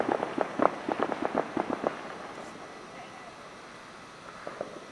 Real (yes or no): yes